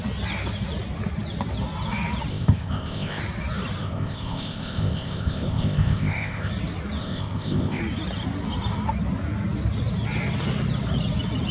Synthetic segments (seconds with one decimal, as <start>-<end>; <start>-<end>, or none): 2.3-3.2; 3.8-6.5; 7.0-7.8